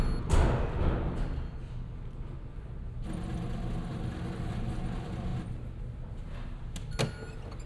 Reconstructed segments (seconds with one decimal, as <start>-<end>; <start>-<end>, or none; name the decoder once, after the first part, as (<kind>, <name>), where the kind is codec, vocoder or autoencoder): 3.9-4.6 (vocoder, BigVGAN v2)